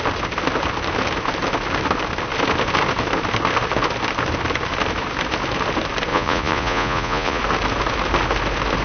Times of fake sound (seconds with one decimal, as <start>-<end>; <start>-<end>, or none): 6.1-7.4